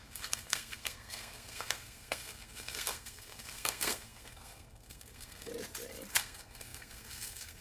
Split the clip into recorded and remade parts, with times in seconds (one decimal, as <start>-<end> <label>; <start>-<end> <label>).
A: 0.0-5.5 remade; 5.5-6.1 recorded; 6.1-7.6 remade